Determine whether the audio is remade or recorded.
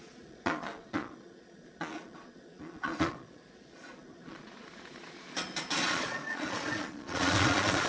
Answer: remade